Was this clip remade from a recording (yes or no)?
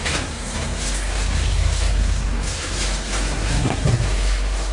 yes